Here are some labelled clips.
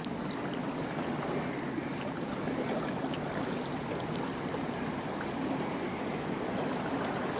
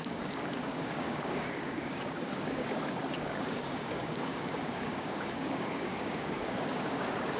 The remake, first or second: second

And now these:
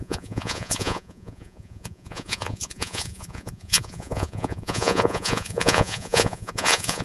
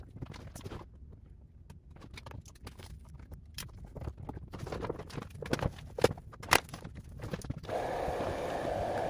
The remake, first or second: first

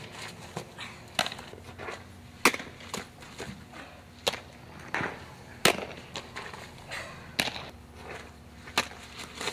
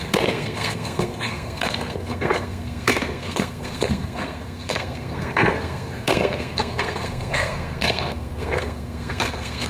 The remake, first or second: second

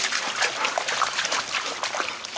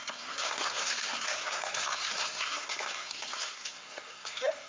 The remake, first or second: second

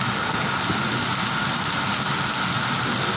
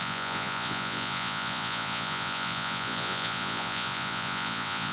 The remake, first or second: second